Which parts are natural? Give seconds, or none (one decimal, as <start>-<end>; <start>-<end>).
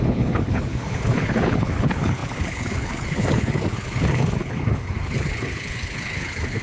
none